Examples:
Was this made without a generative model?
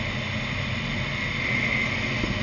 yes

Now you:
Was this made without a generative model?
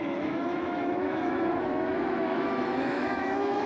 no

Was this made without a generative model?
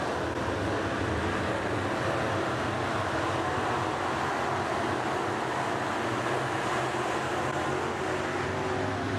yes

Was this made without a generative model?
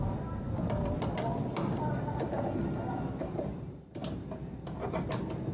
yes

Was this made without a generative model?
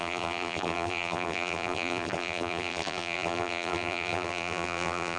no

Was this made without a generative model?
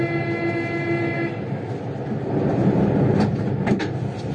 yes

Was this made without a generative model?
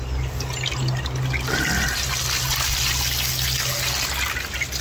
yes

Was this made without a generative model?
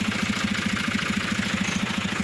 no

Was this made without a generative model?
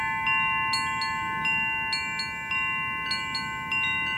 yes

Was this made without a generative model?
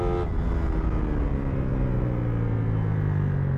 yes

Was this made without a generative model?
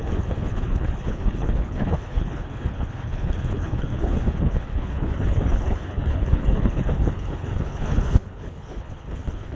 no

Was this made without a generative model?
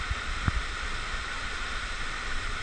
yes